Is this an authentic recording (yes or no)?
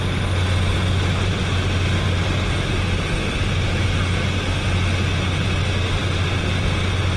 yes